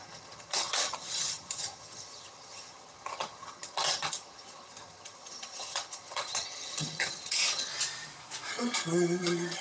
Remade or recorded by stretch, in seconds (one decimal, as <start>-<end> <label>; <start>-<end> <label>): 0.0-7.7 remade; 7.7-8.5 recorded; 8.5-9.6 remade